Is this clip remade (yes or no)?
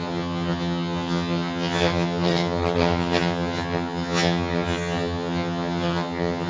yes